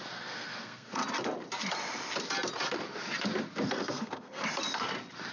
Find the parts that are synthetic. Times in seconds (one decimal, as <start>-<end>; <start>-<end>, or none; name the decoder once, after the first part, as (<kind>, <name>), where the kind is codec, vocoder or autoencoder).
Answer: 0.0-1.0 (codec, SNAC); 3.7-4.4